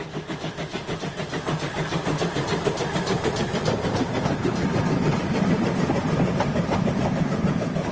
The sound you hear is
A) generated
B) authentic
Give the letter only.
A